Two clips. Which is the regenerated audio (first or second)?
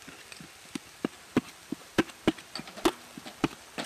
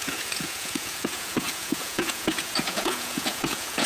second